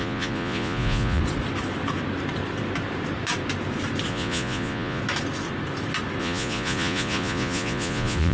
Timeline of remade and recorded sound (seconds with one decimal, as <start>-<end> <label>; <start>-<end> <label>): 0.0-1.2 remade; 1.2-4.1 recorded; 4.1-5.0 remade; 5.0-6.2 recorded; 6.2-8.3 remade